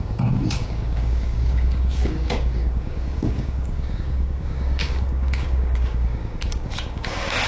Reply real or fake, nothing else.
fake